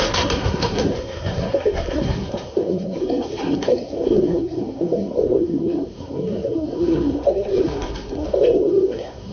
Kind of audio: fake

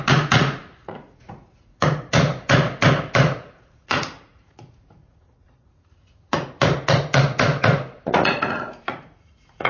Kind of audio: fake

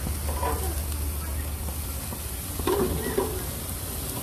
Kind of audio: real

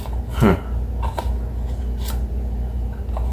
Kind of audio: real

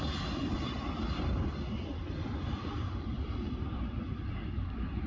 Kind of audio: real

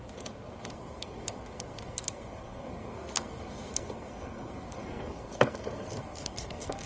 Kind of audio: fake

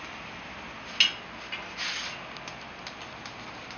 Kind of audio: real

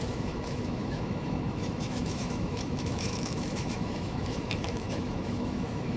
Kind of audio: fake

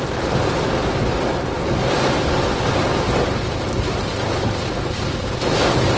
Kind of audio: real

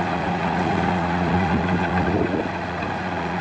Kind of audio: fake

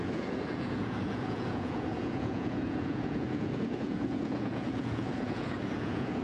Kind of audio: fake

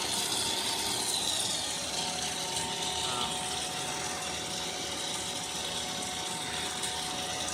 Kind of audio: real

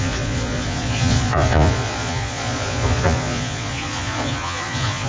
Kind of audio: fake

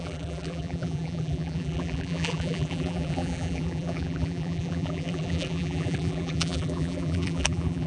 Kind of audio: fake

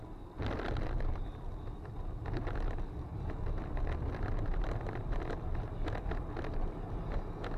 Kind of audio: real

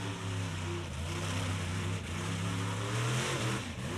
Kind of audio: real